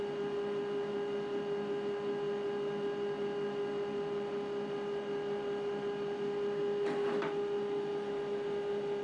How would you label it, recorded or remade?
recorded